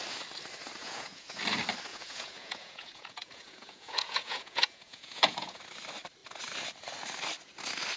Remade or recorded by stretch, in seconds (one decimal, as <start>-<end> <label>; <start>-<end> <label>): 0.0-0.8 recorded; 0.8-1.4 remade; 1.4-1.9 recorded; 1.9-5.6 remade; 5.6-8.0 recorded